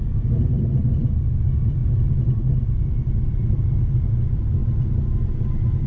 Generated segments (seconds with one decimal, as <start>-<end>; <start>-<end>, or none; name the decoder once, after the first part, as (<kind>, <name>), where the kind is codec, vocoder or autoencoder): 0.0-4.6 (vocoder, BigVGAN v2)